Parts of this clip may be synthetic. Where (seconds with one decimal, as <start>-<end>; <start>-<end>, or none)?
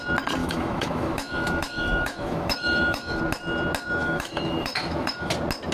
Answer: 0.4-3.2; 4.0-5.3